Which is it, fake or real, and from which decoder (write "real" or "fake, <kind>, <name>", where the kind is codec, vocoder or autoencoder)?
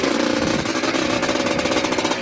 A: real